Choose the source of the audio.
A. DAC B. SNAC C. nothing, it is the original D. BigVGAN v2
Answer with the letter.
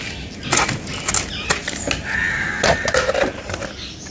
C